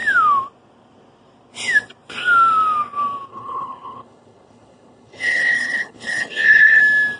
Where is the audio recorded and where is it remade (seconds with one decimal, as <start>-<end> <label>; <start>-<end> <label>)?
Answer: 0.0-3.3 recorded; 3.3-6.8 remade; 6.8-7.2 recorded